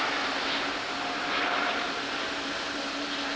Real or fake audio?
real